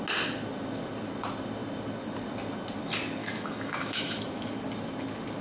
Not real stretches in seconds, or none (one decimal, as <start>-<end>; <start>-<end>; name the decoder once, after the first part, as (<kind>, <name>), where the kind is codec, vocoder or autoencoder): 3.2-4.2 (autoencoder, DAC-VAE)